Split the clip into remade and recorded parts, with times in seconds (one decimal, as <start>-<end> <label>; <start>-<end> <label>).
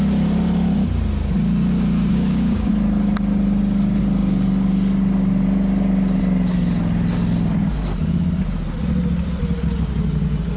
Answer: 0.0-2.1 recorded; 2.1-2.7 remade; 2.7-10.6 recorded